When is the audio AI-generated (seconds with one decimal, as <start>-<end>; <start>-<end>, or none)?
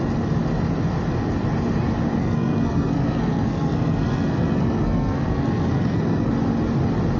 2.2-6.3